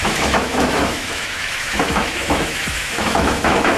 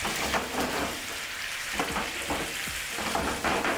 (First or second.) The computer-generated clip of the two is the first